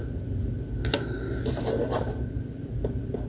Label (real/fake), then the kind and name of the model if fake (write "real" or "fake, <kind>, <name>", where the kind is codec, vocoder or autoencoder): real